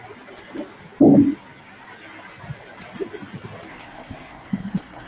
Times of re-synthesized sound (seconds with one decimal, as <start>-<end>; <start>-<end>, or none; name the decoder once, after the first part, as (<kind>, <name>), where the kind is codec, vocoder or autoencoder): 3.7-5.1 (codec, SNAC)